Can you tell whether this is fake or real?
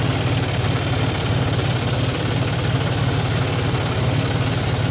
real